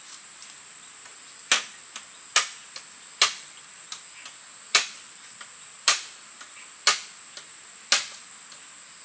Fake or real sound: real